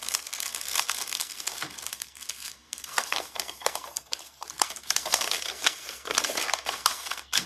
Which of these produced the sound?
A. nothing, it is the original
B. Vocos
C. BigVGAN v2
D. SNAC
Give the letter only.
D